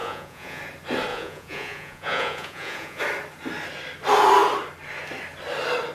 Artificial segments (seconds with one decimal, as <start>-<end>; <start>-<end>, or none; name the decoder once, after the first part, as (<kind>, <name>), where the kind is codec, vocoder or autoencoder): 0.0-0.6 (vocoder, Vocos); 1.1-3.0